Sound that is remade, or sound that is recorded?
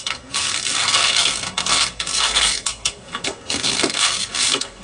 remade